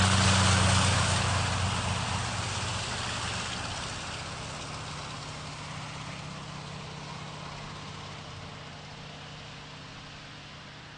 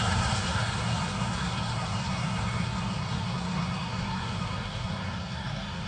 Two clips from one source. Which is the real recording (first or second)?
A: first